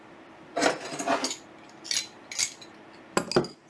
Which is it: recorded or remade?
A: recorded